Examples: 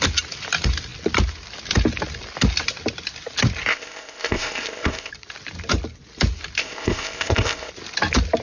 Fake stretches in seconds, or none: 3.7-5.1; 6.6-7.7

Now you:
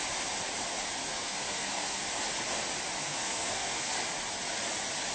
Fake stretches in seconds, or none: 1.1-2.0; 3.0-3.9

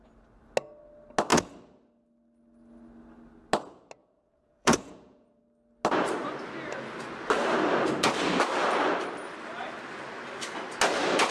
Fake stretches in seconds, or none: 4.0-5.4

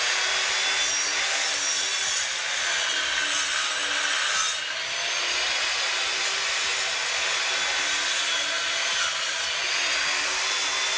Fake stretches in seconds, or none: none

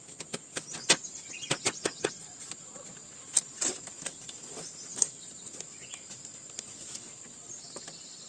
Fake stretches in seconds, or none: 4.9-5.4

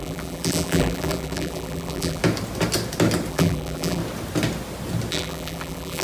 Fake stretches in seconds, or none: 0.0-2.2; 3.3-4.0; 5.1-6.0

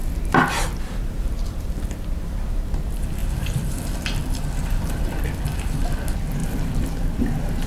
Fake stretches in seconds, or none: 0.0-1.8; 3.2-5.8; 6.4-7.7

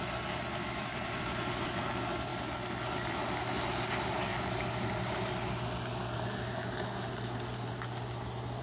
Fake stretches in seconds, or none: 0.8-1.7